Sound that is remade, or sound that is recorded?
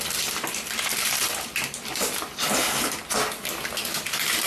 remade